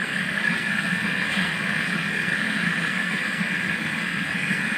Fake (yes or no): yes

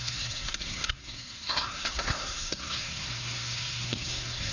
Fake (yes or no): yes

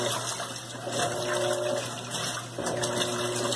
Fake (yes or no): no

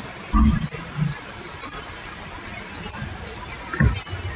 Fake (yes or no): no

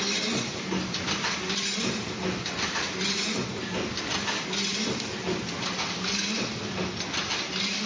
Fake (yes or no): no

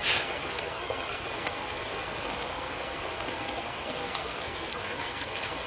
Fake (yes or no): yes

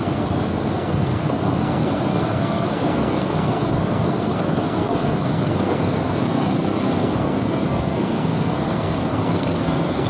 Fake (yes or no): yes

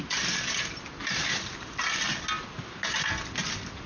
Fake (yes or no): no